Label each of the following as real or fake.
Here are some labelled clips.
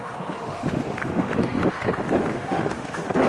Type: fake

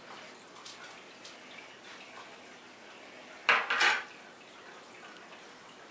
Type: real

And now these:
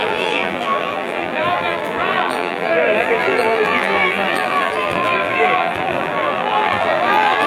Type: fake